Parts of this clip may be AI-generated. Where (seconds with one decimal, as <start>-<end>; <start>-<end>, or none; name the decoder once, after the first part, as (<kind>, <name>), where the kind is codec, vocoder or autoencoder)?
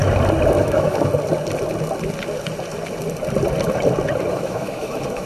0.6-1.1 (autoencoder, DAC-VAE); 4.3-5.3